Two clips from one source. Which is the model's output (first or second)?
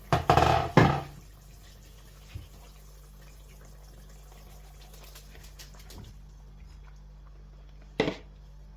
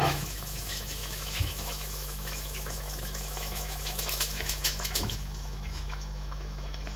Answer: second